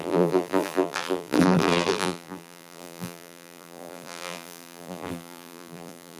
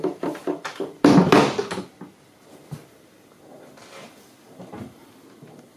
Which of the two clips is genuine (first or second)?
second